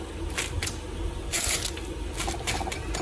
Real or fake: real